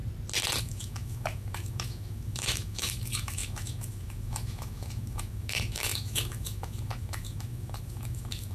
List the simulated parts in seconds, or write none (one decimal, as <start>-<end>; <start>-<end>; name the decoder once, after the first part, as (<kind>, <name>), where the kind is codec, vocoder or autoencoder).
0.6-8.5 (autoencoder, DAC-VAE)